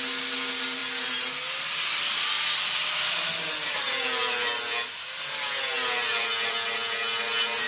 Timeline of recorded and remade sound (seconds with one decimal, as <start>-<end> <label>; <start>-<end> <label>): 0.0-7.7 recorded